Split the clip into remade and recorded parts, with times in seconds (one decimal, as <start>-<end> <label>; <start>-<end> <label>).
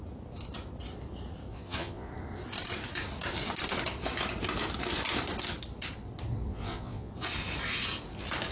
0.0-1.5 recorded; 1.5-2.1 remade; 2.1-6.5 recorded; 6.5-7.1 remade; 7.1-8.5 recorded